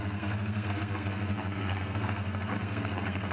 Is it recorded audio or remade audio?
remade